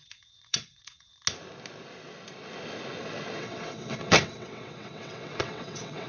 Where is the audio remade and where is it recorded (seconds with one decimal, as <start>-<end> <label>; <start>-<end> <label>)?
0.0-1.1 remade; 1.1-3.4 recorded; 3.4-6.1 remade

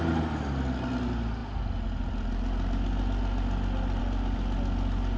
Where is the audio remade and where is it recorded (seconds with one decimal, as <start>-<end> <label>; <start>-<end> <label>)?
0.0-5.2 recorded